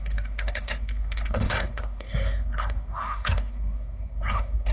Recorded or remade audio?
remade